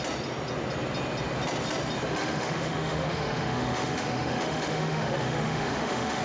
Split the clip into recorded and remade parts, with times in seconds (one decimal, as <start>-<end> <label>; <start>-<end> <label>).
0.0-2.2 recorded; 2.2-6.2 remade